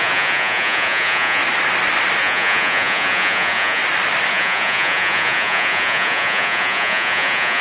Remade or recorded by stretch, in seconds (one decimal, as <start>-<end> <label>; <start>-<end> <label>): 0.0-1.4 remade; 1.4-2.2 recorded; 2.2-3.8 remade; 3.8-4.3 recorded; 4.3-7.6 remade